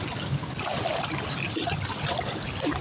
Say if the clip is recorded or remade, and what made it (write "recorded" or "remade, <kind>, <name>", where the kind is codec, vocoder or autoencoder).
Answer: recorded